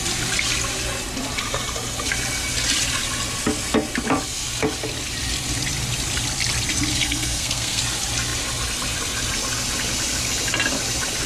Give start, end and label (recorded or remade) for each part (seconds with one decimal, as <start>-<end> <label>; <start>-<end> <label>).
0.0-6.9 recorded; 6.9-7.8 remade; 7.8-11.3 recorded

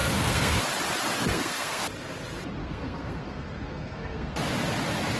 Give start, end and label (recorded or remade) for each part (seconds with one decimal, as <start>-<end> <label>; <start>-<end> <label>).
0.0-0.6 remade; 0.6-1.3 recorded; 1.3-1.8 remade; 1.8-2.6 recorded; 2.6-4.4 remade; 4.4-5.2 recorded

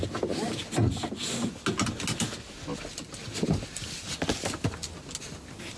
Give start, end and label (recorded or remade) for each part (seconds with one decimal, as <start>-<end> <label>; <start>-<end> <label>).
0.0-5.8 recorded

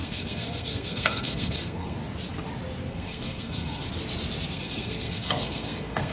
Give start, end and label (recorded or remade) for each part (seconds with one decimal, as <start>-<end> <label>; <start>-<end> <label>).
0.0-2.0 remade; 2.0-2.9 recorded; 2.9-3.9 remade; 3.9-4.5 recorded; 4.5-6.1 remade

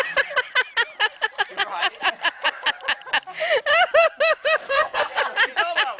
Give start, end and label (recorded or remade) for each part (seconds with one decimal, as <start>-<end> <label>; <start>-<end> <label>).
0.0-4.6 recorded; 4.6-5.2 remade; 5.2-6.0 recorded